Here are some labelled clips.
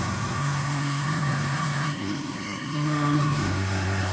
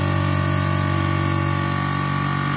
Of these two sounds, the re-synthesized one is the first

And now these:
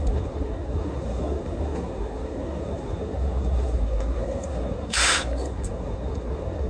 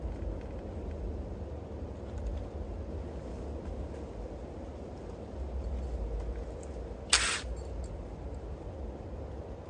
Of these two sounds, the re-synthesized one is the first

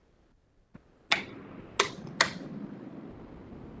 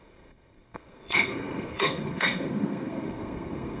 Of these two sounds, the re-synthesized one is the second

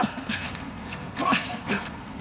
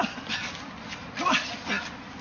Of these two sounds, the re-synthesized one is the first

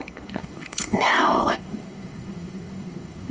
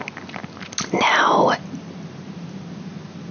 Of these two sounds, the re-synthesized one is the first